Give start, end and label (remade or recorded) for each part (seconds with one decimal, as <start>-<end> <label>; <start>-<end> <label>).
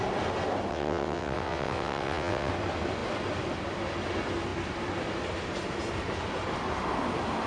0.0-0.7 recorded; 0.7-2.5 remade; 2.5-7.5 recorded